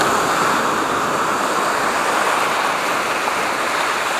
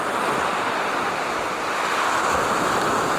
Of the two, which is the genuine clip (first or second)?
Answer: second